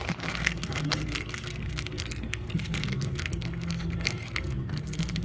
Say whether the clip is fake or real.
fake